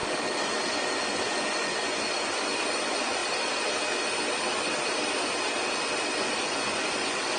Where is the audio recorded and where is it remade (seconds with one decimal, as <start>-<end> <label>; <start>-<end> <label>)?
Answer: 0.0-0.7 recorded; 0.7-3.2 remade; 3.2-6.2 recorded; 6.2-7.4 remade